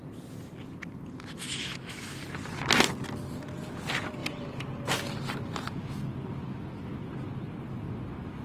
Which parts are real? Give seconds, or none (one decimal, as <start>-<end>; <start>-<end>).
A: 0.0-1.7; 2.2-8.4